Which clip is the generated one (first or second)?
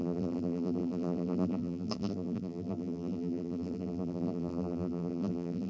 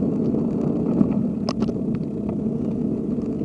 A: first